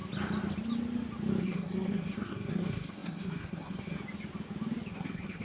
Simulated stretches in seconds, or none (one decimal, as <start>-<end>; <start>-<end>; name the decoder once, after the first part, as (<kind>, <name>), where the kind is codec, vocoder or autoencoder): 1.4-4.0 (codec, SNAC); 4.9-5.4